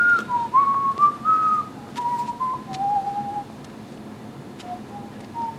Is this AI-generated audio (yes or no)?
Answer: no